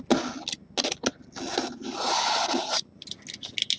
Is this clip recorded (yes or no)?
yes